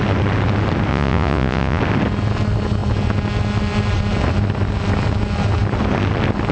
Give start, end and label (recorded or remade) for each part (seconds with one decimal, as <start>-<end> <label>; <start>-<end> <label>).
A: 0.0-0.9 recorded; 0.9-1.8 remade; 1.8-6.5 recorded